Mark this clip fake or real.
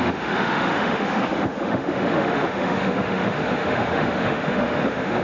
fake